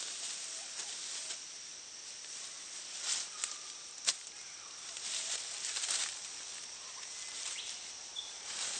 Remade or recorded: recorded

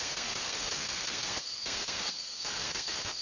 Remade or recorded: remade